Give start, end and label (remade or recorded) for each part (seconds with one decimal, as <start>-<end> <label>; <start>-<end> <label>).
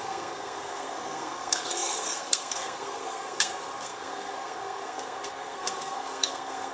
0.0-6.7 remade